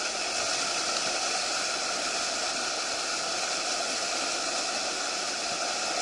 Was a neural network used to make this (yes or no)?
no